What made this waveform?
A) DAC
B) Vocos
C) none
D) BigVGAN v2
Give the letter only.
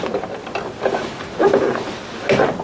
C